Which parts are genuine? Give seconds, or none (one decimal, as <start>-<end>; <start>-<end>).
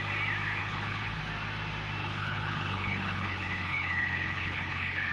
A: 0.0-0.6; 1.2-2.0